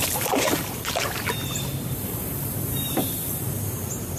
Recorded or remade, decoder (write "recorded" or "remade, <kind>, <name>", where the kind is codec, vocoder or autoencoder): remade, vocoder, BigVGAN v2